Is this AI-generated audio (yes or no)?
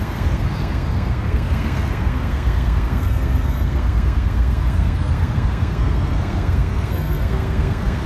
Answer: yes